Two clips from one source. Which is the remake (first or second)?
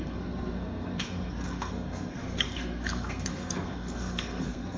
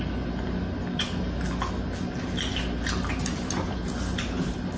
first